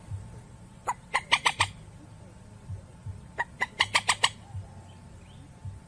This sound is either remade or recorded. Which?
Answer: recorded